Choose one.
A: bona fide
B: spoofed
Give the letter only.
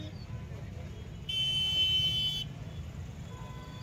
A